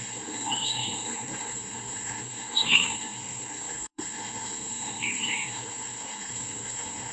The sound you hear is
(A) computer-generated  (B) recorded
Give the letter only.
A